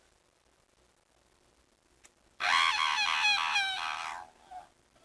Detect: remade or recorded recorded